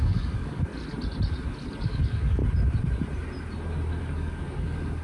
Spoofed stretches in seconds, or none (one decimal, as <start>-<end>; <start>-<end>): 0.0-0.7; 1.8-2.4; 4.0-5.0